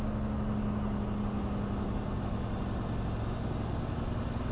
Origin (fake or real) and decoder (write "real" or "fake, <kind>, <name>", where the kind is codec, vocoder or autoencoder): real